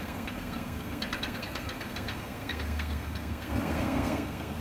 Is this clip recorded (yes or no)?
no